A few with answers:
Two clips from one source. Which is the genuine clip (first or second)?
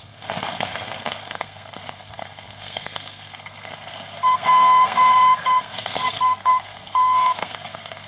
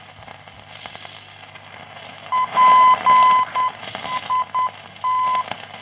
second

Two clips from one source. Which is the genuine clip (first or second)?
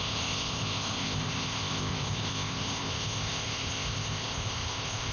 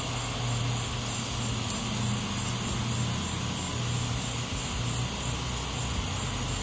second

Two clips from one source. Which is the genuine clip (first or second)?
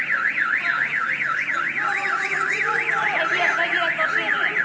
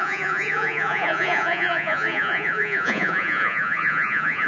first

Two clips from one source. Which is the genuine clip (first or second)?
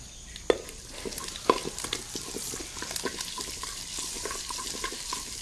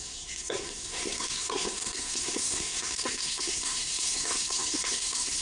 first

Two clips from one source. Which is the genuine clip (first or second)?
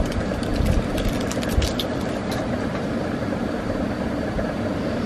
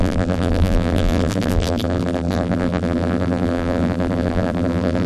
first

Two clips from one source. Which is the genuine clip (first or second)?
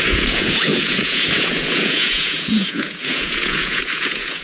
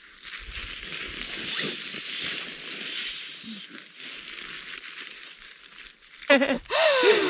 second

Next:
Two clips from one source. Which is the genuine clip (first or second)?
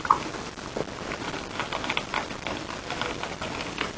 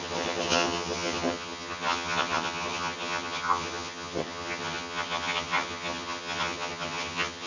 first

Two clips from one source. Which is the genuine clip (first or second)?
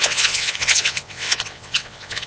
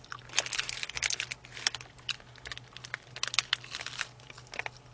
second